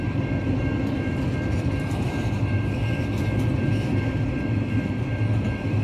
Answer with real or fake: fake